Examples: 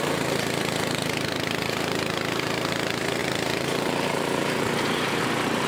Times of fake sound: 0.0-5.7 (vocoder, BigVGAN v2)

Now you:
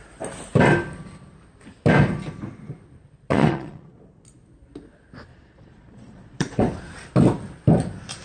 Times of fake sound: 3.3-4.0 (vocoder, Vocos); 5.3-6.6